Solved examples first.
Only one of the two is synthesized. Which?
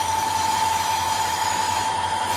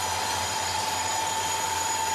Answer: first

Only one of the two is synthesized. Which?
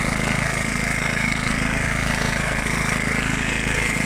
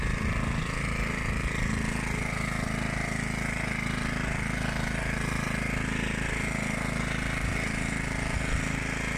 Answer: first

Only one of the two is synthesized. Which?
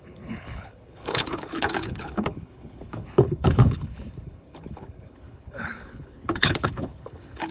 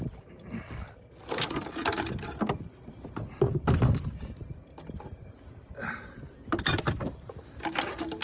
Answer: first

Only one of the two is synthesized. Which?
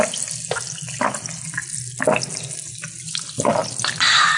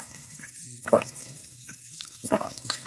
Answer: second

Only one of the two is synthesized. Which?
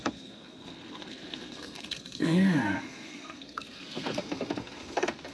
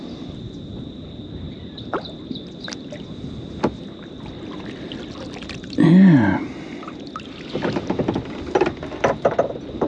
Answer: first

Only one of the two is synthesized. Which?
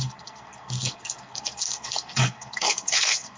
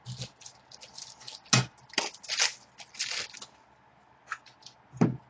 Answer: first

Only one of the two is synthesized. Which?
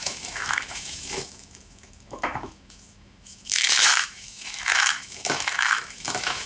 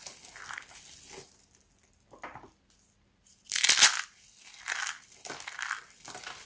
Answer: first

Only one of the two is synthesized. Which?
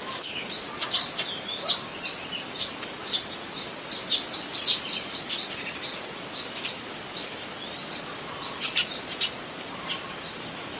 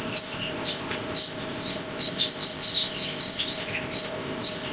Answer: second